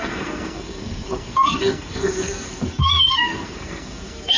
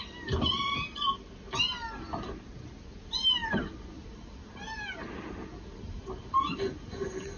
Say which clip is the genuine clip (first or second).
second